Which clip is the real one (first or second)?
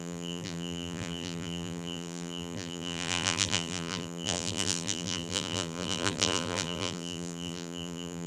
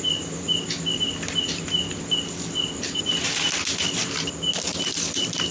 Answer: second